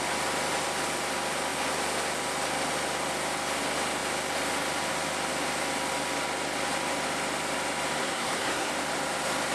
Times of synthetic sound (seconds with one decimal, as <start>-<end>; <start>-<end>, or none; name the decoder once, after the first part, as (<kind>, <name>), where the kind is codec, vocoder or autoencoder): 8.0-8.7 (codec, SNAC)